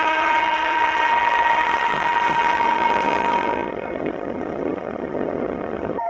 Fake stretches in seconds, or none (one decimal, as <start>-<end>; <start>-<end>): 0.0-6.1